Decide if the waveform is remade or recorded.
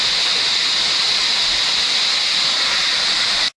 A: recorded